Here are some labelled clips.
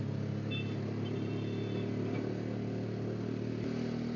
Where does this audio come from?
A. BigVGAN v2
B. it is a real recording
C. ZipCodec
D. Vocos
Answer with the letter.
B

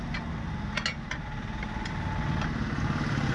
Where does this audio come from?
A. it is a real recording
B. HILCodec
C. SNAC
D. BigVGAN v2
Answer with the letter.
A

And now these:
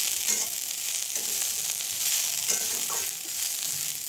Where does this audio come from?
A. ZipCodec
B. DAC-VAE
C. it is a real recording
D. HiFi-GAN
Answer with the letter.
C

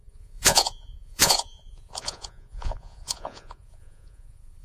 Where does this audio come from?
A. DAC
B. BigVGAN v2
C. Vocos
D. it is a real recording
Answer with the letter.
C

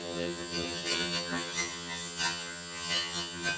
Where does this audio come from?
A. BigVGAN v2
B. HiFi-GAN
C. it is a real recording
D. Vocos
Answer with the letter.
B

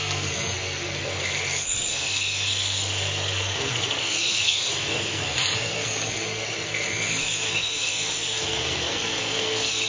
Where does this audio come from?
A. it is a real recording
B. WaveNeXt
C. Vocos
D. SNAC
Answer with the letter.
D